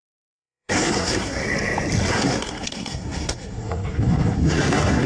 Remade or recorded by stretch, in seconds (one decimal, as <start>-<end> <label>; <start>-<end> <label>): 0.0-1.4 remade; 1.4-2.1 recorded; 2.1-5.1 remade